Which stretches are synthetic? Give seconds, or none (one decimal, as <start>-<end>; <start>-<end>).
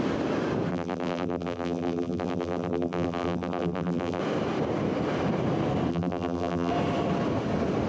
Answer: 0.7-4.2; 5.9-6.7